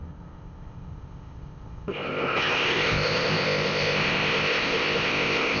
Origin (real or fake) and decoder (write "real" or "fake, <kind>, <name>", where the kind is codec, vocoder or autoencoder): fake, codec, ZipCodec